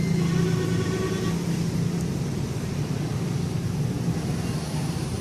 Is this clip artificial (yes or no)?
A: no